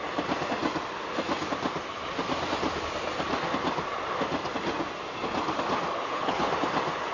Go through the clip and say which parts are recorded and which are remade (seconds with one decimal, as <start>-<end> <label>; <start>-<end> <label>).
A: 0.0-6.0 recorded; 6.0-6.5 remade; 6.5-7.1 recorded